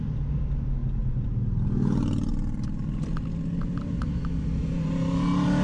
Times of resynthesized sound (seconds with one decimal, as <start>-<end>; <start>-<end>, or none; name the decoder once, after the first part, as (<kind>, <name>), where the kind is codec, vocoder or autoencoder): none